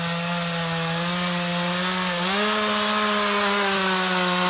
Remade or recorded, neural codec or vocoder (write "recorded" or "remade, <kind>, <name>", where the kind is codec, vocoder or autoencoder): recorded